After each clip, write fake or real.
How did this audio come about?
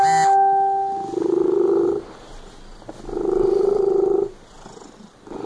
real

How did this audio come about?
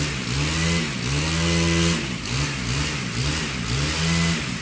real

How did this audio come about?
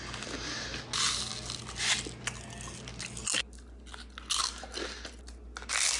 real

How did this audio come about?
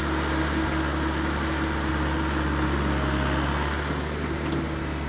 real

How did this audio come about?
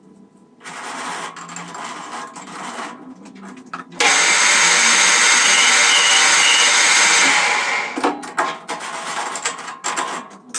real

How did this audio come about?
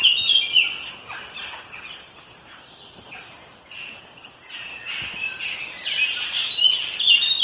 real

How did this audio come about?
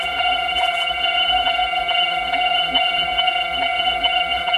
fake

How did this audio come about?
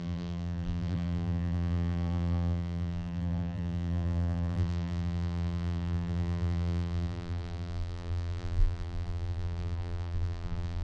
fake